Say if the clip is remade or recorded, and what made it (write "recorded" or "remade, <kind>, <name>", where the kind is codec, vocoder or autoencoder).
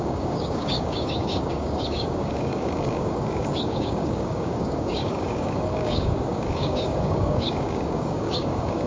remade, codec, DAC